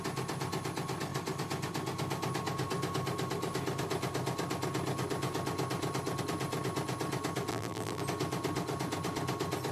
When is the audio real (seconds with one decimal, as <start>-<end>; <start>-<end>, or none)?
0.0-7.5; 8.0-9.7